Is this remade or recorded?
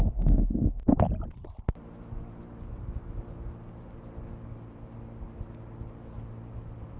recorded